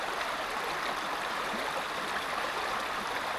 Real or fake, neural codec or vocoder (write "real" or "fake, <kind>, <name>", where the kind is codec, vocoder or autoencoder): real